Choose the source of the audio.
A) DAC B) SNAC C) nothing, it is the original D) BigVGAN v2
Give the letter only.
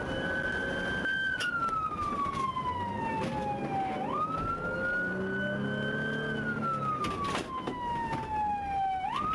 C